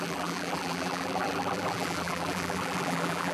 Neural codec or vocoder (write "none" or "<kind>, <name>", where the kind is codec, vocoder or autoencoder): vocoder, BigVGAN v2